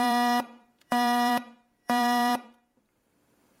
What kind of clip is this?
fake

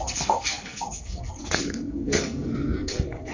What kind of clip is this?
fake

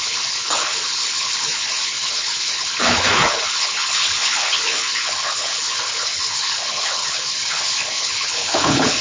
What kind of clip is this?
fake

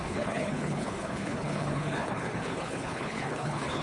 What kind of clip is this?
fake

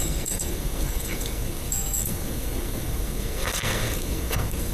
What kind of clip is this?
fake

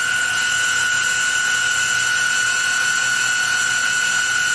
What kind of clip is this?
fake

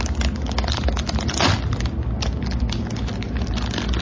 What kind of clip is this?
real